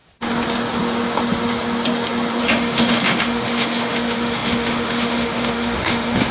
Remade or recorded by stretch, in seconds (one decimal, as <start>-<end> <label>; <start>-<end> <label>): 0.0-2.4 recorded; 2.4-6.3 remade